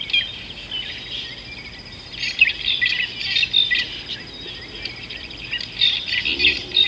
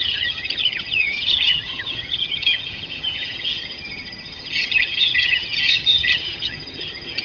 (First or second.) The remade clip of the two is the second